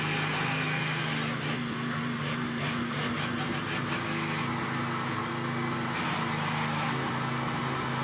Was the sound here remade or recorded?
recorded